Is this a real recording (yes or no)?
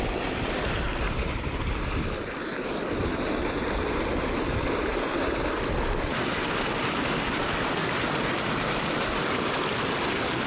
yes